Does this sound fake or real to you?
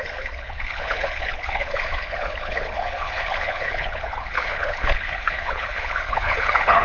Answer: fake